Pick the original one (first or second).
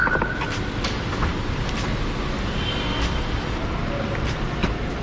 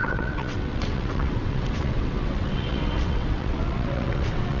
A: first